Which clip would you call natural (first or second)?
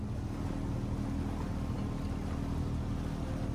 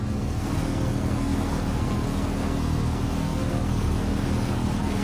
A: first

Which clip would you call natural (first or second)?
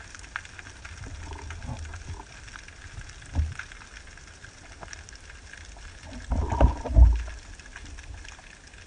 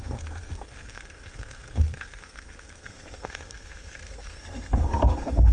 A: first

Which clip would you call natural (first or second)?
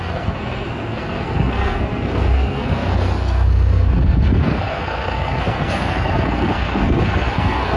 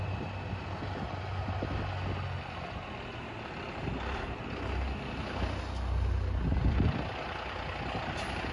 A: second